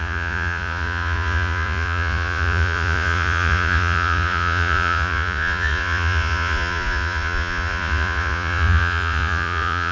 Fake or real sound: fake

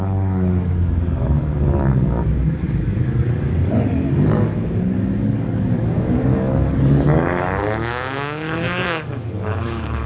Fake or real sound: fake